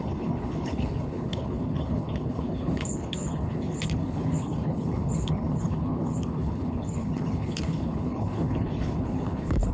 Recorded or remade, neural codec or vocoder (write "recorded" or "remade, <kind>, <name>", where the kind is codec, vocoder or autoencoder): remade, codec, HILCodec